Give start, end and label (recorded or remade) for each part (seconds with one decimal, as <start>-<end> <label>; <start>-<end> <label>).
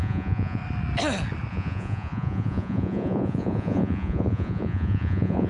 0.0-0.6 remade; 0.6-1.5 recorded; 1.5-5.5 remade